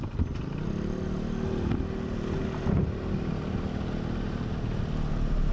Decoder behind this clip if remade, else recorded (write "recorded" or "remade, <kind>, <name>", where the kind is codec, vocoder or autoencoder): recorded